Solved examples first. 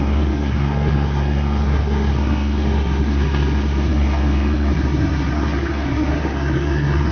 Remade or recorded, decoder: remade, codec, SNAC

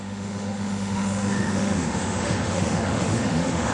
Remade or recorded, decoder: remade, autoencoder, DAC-VAE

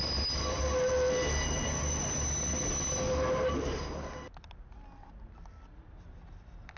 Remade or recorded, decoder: recorded